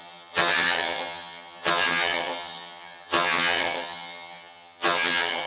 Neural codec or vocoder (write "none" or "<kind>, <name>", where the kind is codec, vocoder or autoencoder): vocoder, HiFi-GAN